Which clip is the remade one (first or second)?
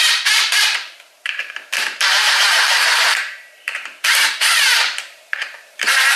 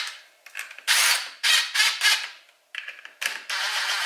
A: first